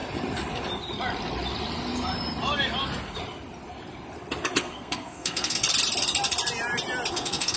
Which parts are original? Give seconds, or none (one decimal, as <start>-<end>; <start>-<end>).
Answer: 0.0-4.6; 5.6-7.1